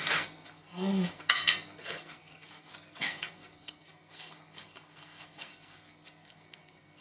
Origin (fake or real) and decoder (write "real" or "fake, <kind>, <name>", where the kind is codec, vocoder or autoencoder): fake, codec, SNAC